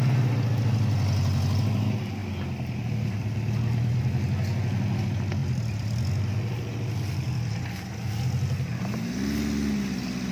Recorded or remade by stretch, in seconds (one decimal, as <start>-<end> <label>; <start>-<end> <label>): 0.0-5.4 recorded; 5.4-6.0 remade; 6.0-10.3 recorded